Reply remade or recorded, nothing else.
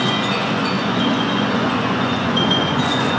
remade